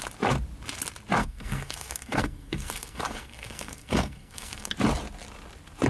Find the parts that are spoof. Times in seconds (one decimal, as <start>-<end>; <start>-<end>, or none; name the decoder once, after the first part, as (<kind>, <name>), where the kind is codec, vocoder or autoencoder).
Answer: 1.2-4.7 (codec, SNAC)